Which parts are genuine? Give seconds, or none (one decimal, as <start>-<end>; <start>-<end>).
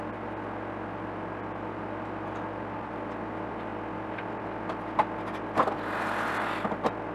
0.0-7.1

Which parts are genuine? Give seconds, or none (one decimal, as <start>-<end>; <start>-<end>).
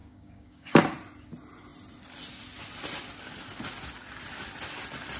0.8-5.2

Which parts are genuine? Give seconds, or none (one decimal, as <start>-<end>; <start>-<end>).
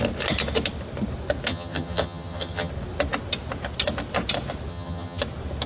0.0-1.5; 2.7-4.7; 5.2-5.7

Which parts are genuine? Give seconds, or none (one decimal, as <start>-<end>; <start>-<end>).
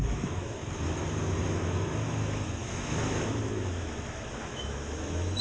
0.6-1.4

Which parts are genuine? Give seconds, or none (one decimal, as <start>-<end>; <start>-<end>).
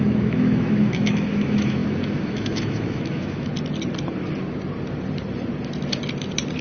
3.5-6.6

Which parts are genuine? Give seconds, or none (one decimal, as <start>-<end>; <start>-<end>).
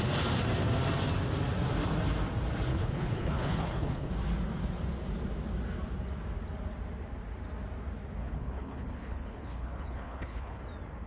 0.0-2.7; 4.1-8.2; 10.6-11.1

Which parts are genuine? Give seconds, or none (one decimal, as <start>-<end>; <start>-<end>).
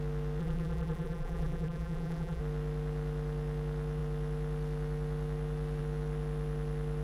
0.0-0.4; 2.4-7.0